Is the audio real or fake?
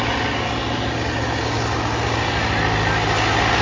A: real